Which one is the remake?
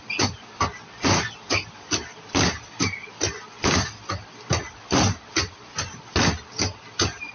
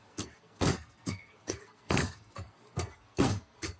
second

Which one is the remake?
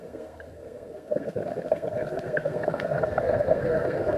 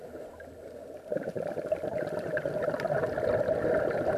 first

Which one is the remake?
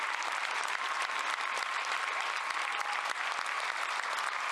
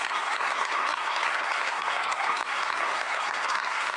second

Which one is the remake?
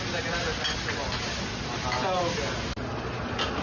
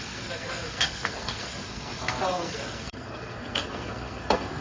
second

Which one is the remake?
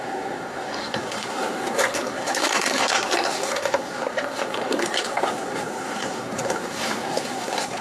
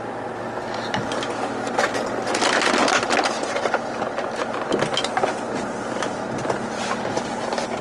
first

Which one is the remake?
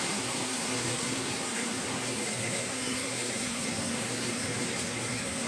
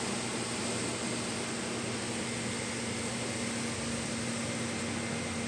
first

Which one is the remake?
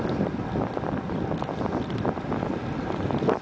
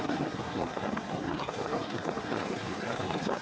second